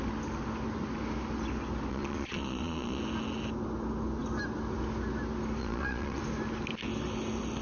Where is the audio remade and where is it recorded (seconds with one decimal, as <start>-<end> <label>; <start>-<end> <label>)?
0.0-1.9 recorded; 1.9-3.0 remade; 3.0-5.6 recorded; 5.6-6.2 remade; 6.2-7.6 recorded